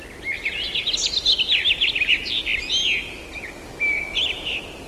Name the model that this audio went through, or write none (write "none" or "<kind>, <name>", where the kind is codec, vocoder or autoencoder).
none